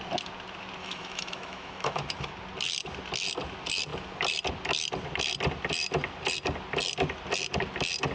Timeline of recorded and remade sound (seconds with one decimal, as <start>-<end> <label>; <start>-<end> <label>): 0.0-0.8 recorded; 0.8-2.3 remade; 2.3-8.1 recorded